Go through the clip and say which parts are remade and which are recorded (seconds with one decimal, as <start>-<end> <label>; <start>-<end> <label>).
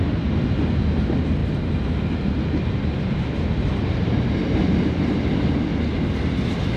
0.0-6.8 recorded